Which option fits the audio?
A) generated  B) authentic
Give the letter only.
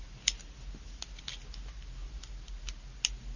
B